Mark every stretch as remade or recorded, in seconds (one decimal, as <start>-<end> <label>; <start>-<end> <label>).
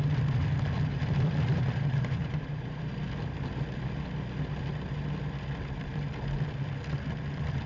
0.0-0.9 recorded; 0.9-2.9 remade; 2.9-7.7 recorded